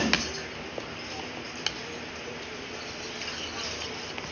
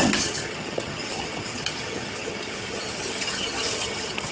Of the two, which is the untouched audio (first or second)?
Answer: first